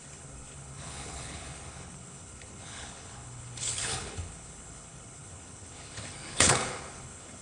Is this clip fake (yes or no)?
yes